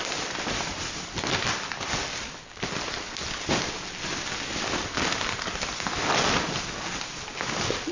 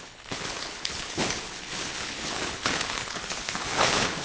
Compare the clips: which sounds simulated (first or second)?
second